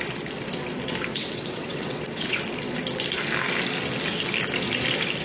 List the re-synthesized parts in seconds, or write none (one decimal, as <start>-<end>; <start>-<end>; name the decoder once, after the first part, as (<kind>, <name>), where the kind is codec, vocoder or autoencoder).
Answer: 1.1-2.4 (vocoder, WaveNeXt)